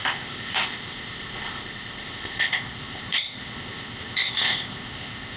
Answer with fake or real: fake